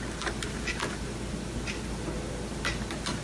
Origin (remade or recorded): recorded